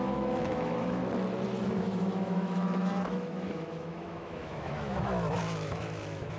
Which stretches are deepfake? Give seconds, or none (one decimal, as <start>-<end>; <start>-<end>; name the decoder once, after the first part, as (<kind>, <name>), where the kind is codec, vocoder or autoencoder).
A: 0.0-1.0 (autoencoder, DAC-VAE); 1.6-6.4